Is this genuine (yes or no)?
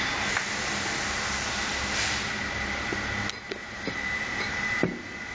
yes